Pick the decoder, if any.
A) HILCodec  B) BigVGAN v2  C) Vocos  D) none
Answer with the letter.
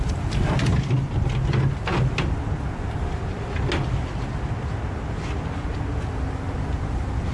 D